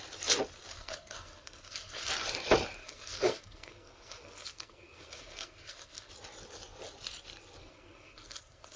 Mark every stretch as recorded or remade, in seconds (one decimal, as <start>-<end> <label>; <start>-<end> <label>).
0.0-0.7 recorded; 0.7-2.1 remade; 2.1-2.8 recorded; 2.8-6.1 remade; 6.1-7.6 recorded; 7.6-8.8 remade